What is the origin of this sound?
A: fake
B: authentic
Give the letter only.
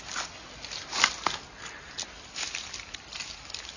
B